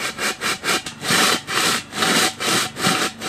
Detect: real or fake fake